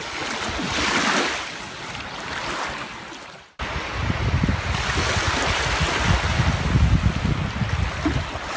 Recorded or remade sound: recorded